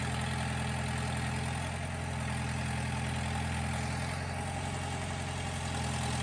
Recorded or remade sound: recorded